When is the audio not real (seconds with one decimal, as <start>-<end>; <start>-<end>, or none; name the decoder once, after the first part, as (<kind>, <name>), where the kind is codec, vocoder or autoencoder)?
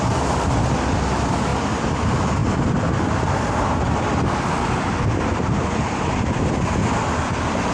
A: none